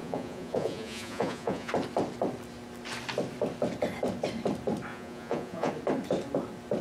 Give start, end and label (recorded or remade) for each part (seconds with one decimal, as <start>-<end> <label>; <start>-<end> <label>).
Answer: 0.0-1.7 remade; 1.7-4.9 recorded; 4.9-5.7 remade; 5.7-6.8 recorded